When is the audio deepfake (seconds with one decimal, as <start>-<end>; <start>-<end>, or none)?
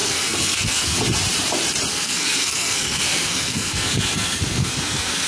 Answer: 0.0-1.0; 1.9-5.3